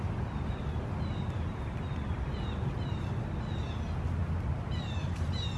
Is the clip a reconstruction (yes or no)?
no